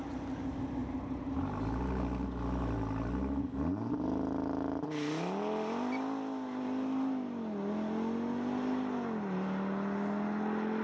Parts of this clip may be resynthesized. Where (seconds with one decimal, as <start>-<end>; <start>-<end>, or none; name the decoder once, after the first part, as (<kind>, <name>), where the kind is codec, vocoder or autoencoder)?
0.8-1.9 (vocoder, BigVGAN v2)